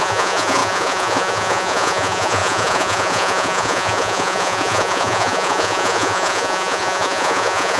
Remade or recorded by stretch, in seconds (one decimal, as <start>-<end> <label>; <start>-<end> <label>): 0.0-7.8 remade